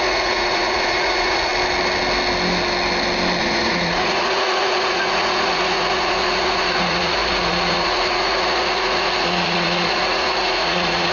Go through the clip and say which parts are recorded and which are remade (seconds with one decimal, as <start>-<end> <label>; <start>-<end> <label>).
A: 0.0-1.5 remade; 1.5-3.4 recorded; 3.4-11.1 remade